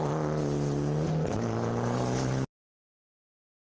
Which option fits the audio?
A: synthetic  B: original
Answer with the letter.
B